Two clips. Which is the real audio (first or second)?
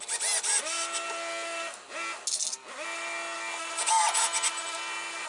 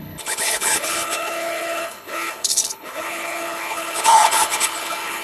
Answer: first